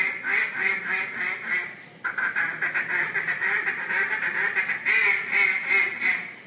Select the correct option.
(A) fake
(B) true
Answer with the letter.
B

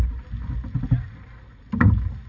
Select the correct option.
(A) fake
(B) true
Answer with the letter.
B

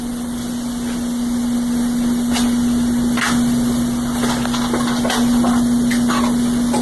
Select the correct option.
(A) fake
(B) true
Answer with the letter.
B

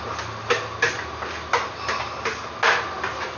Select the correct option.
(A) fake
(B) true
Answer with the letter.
B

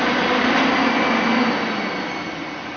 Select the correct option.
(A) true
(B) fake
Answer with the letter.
A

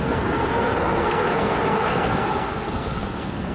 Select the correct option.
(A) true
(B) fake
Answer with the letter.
B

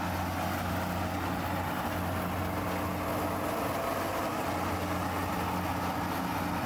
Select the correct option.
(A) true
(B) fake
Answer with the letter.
A